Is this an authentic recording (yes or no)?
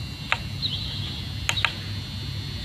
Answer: yes